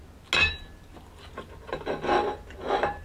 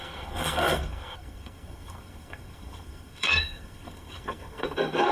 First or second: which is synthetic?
second